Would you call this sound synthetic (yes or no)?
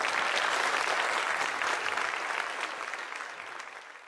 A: no